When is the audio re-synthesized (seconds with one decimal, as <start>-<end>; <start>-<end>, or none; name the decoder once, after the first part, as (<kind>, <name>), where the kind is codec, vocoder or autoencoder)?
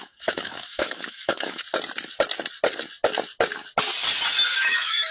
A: 0.0-1.6 (autoencoder, DAC-VAE); 4.5-5.1